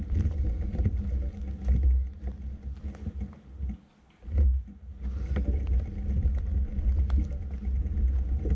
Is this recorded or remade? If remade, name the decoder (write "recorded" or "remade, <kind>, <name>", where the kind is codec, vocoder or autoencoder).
recorded